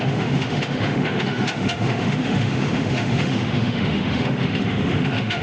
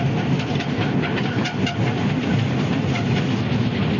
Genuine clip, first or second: second